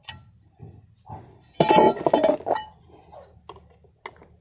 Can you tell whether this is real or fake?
real